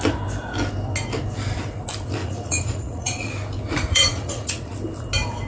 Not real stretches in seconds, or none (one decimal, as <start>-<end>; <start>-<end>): 2.2-3.3; 3.9-4.7